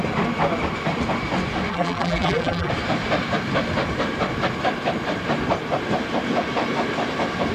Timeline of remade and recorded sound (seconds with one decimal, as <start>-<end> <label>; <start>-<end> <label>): 0.0-1.7 recorded; 1.7-2.7 remade; 2.7-7.5 recorded